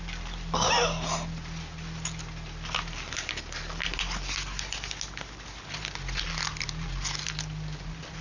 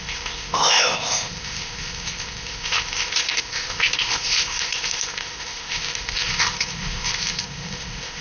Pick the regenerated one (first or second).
second